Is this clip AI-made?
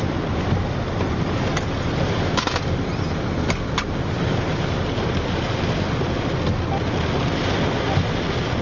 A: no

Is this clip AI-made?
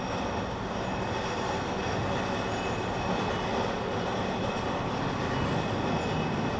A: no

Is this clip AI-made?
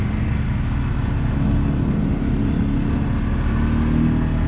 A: no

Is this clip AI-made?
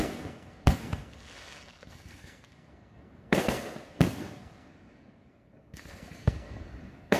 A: yes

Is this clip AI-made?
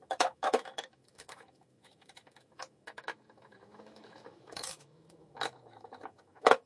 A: yes